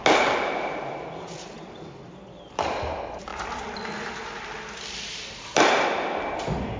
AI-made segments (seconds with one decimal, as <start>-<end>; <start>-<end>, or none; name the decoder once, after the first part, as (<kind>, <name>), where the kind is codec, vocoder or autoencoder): none